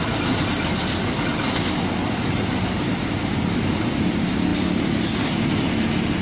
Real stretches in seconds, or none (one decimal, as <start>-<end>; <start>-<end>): 0.0-4.5; 5.1-6.2